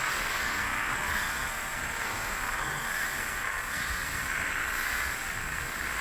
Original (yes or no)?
no